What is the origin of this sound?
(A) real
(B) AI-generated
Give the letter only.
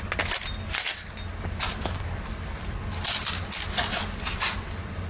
A